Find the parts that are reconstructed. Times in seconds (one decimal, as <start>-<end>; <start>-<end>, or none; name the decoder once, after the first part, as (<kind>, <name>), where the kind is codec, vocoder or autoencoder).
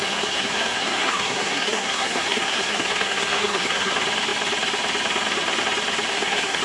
0.0-3.9 (codec, SNAC); 6.1-6.6